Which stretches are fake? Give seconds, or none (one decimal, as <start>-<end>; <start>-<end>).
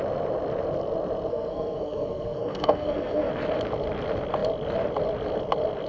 1.3-3.3